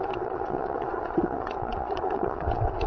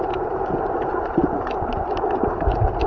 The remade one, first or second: first